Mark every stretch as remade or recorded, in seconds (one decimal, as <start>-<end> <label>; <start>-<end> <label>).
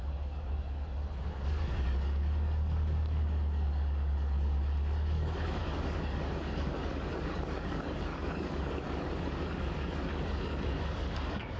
0.0-11.6 remade